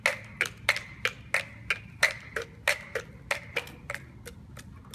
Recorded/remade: recorded